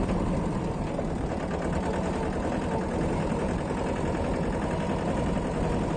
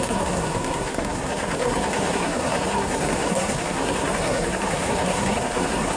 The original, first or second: first